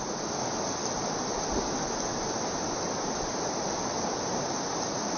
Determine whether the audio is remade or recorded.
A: recorded